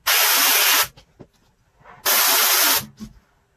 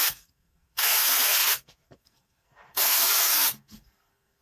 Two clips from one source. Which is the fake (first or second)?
second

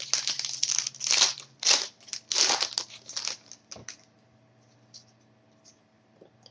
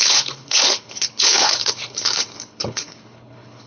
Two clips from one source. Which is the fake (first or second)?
second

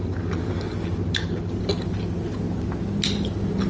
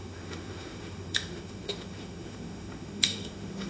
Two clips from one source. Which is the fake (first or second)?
second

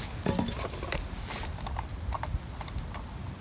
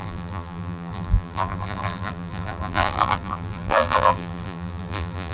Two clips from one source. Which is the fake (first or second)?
second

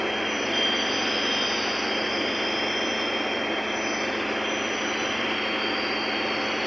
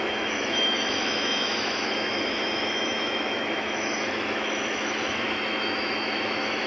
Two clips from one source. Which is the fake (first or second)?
second